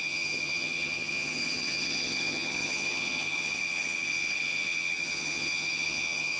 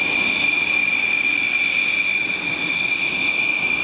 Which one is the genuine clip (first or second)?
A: second